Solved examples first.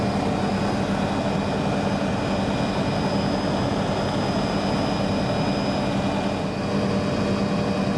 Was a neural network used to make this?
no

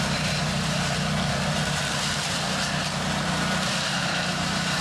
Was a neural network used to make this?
yes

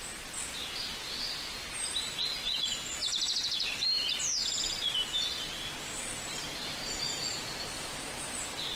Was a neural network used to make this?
no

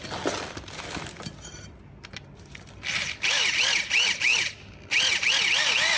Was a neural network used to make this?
no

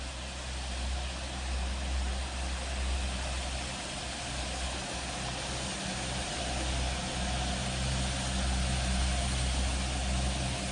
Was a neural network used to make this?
no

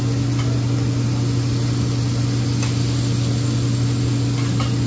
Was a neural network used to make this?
no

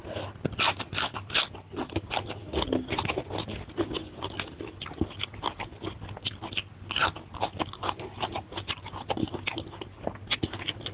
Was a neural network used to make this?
no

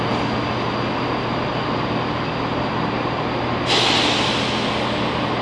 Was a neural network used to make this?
no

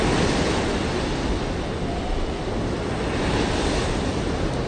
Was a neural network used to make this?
no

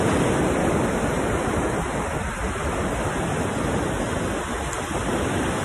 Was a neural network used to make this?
no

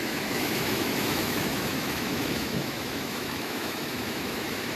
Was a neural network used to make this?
yes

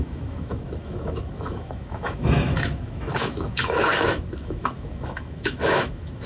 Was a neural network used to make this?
yes